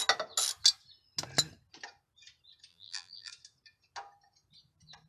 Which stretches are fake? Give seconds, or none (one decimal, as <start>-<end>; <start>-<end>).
2.7-3.3